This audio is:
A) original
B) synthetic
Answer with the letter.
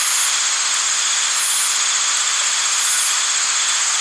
A